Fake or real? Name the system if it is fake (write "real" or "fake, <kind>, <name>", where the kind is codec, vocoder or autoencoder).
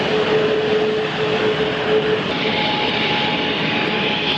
real